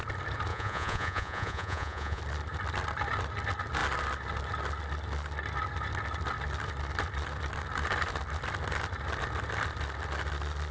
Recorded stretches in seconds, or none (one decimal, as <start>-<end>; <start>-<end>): 0.0-0.5; 2.2-10.7